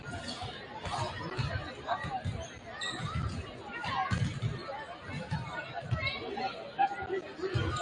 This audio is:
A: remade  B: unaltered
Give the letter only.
B